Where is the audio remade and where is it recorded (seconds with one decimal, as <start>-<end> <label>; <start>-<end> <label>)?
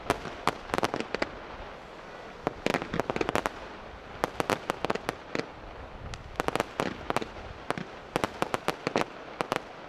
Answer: 0.0-9.9 recorded